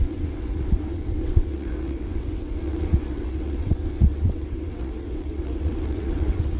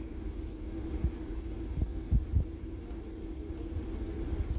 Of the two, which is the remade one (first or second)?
first